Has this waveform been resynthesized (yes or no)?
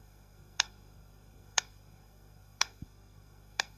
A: yes